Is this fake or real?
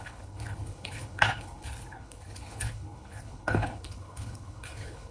fake